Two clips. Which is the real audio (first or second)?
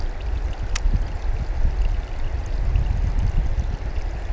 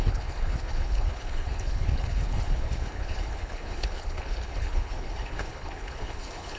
first